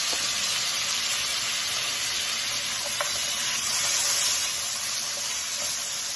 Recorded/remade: recorded